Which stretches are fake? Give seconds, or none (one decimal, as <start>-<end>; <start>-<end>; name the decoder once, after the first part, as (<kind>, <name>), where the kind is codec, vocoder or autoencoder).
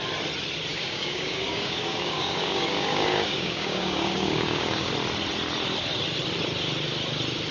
0.7-4.9 (codec, DAC)